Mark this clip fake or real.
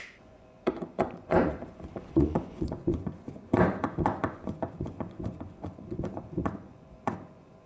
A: fake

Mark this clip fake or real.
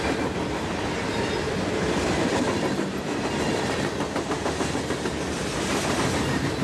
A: real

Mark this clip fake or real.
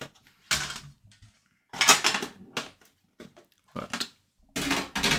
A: real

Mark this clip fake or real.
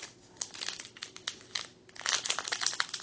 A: real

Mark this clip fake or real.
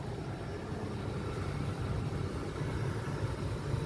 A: real